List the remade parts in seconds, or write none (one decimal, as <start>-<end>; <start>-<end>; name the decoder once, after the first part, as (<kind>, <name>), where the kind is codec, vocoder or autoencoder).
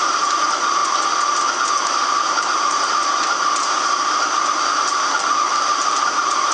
0.0-0.8 (vocoder, BigVGAN v2); 1.9-3.0; 3.6-6.5